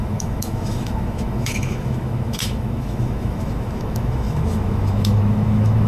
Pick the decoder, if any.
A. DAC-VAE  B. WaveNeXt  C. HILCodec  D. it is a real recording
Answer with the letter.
A